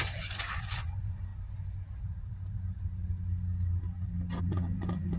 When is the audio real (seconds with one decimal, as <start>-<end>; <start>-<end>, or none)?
1.3-4.4